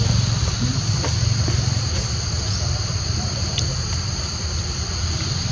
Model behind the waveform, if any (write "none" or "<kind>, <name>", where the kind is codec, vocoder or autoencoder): vocoder, BigVGAN v2